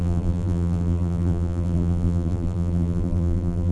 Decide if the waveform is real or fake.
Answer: fake